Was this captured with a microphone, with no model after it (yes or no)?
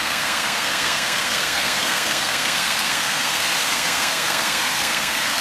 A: no